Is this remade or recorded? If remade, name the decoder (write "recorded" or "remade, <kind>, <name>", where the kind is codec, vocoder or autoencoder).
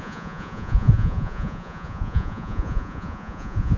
remade, vocoder, Vocos